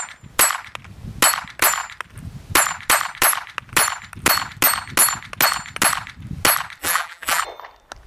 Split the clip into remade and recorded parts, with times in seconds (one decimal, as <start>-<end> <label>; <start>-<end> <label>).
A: 0.0-6.8 recorded; 6.8-7.4 remade; 7.4-8.1 recorded